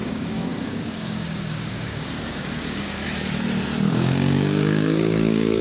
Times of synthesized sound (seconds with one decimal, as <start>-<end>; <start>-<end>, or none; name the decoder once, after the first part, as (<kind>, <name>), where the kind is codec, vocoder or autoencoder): 0.0-3.0 (codec, DAC); 3.9-5.6